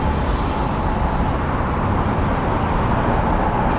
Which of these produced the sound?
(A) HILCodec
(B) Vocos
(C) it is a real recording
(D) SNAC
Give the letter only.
C